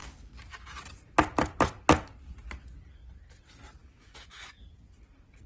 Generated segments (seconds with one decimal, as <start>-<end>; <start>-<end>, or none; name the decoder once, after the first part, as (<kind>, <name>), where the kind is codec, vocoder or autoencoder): 3.8-4.5 (autoencoder, DAC-VAE)